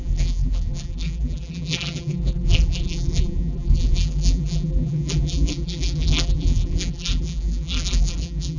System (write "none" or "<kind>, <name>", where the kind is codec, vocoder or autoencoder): vocoder, BigVGAN v2